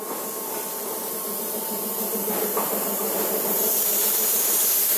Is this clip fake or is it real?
real